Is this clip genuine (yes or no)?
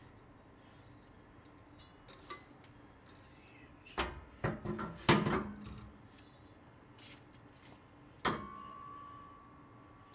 yes